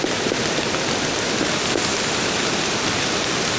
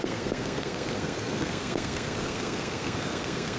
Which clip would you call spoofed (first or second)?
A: second